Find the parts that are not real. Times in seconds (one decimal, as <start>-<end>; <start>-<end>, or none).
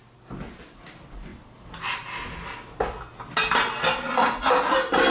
none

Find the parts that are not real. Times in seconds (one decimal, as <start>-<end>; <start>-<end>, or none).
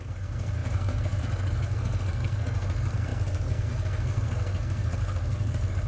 0.0-5.9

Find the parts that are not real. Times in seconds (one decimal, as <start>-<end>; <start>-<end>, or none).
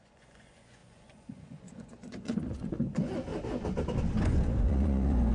0.0-3.3; 4.2-5.3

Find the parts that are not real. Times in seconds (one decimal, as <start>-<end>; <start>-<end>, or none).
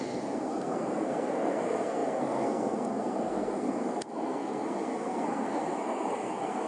0.0-6.7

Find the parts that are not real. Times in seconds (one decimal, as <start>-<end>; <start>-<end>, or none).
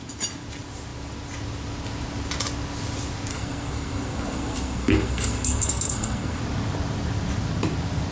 3.3-6.4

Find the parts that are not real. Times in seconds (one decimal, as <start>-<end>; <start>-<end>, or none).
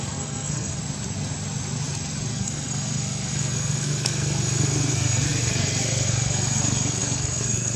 0.0-0.8; 2.3-7.8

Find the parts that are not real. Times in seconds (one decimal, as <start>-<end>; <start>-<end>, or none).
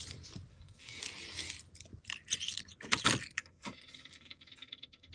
0.5-1.0; 3.4-5.1